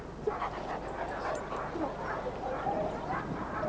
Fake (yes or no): no